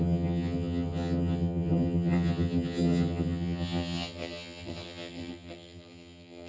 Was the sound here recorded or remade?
remade